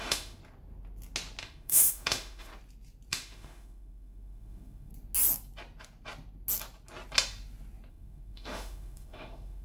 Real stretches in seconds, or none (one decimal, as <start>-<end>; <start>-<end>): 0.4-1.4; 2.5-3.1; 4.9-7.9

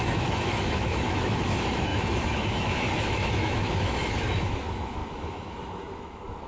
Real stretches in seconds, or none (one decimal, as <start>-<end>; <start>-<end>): none

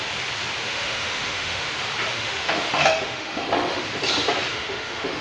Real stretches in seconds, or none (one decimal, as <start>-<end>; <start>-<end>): 0.0-0.6; 1.7-2.1; 3.8-4.5

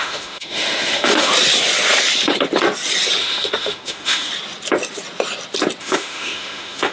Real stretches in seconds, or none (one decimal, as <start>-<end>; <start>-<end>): 1.3-3.2; 4.3-5.8

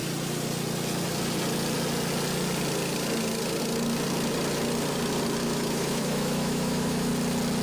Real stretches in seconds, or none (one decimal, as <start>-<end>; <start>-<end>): 0.0-5.4; 7.1-7.6

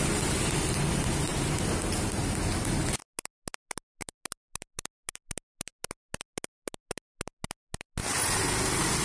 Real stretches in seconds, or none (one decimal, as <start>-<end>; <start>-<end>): 0.0-9.0

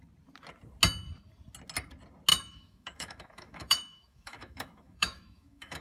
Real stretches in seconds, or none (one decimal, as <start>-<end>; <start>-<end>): 0.0-2.3